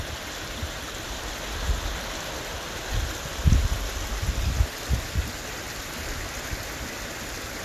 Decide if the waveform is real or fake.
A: real